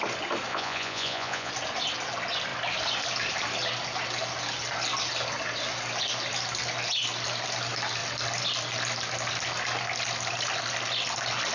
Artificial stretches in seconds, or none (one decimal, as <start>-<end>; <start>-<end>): 0.5-1.5